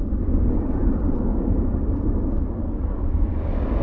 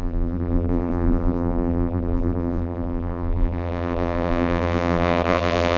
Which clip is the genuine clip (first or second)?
first